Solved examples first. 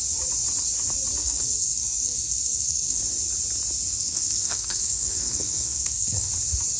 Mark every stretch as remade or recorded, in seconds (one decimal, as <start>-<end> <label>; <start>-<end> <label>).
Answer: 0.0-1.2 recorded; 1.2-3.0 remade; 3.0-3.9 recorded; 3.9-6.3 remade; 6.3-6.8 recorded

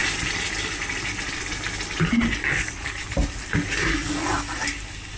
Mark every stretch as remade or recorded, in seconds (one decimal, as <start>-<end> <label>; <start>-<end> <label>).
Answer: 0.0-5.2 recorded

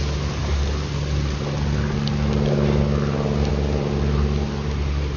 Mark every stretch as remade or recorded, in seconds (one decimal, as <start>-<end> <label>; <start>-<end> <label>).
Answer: 0.0-5.2 recorded

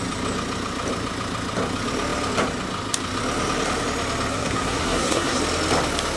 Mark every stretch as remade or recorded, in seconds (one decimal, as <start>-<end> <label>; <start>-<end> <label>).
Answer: 0.0-4.3 recorded; 4.3-5.4 remade; 5.4-6.2 recorded

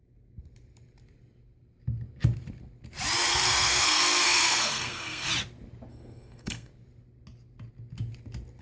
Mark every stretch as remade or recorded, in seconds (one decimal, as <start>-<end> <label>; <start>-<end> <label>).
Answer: 0.0-3.3 recorded; 3.3-5.3 remade; 5.3-5.9 recorded; 5.9-6.7 remade; 6.7-8.6 recorded